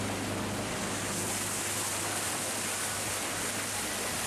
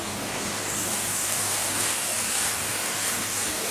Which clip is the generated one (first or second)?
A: second